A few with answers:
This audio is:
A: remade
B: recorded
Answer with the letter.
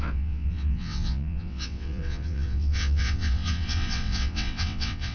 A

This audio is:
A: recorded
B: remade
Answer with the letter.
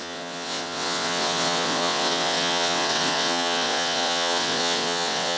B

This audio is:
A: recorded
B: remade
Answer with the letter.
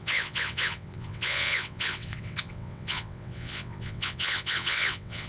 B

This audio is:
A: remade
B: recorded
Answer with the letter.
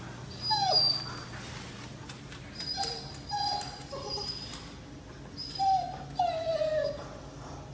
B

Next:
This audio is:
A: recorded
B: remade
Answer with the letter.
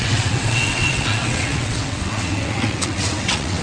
B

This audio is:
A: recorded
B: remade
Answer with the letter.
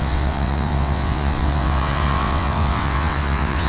B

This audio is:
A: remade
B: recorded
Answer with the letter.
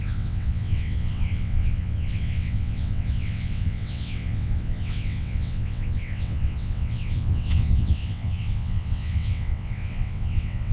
A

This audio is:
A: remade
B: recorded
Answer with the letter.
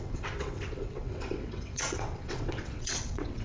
A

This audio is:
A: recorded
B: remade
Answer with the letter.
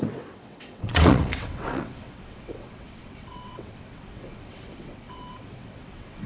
B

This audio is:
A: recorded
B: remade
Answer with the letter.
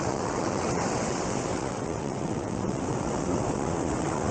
B